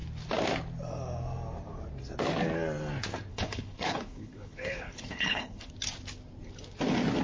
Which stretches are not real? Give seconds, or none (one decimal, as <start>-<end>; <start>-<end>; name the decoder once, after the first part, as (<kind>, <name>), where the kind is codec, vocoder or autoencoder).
3.3-5.7 (codec, HILCodec)